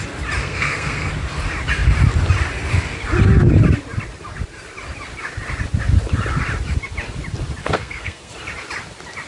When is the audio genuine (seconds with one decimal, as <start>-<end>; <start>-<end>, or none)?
0.0-0.4; 1.1-7.6; 8.3-9.3